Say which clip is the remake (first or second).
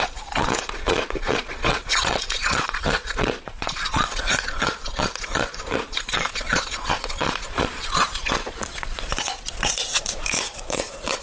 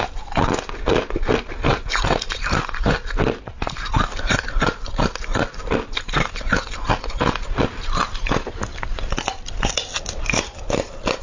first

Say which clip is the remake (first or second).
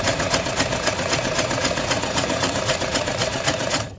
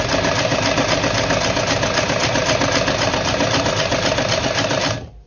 first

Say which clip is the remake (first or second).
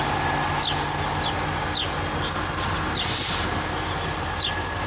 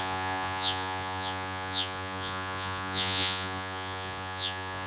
second